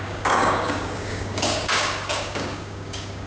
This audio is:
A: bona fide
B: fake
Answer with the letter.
B